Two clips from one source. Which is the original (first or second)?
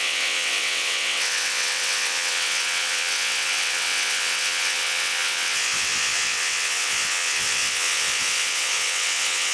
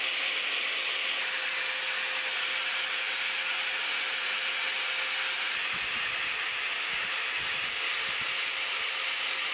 second